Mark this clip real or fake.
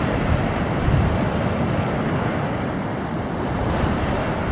real